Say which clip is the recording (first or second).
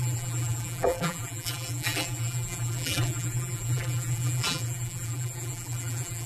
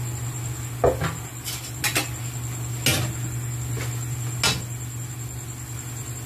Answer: second